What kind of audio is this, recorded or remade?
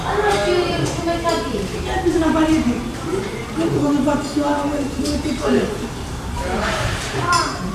remade